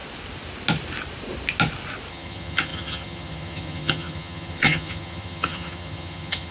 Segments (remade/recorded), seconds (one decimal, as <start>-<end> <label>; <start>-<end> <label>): 0.0-2.1 recorded; 2.1-6.5 remade